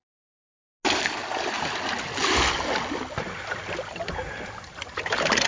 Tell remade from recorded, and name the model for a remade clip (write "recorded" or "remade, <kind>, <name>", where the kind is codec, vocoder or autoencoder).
recorded